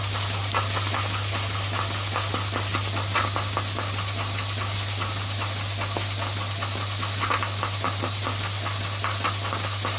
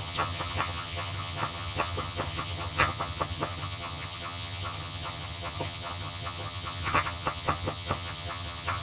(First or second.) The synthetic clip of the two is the second